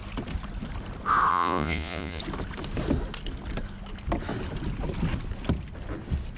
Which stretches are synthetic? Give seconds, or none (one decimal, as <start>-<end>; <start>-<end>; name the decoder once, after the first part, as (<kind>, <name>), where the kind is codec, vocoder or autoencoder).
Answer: 1.3-2.2 (vocoder, Vocos)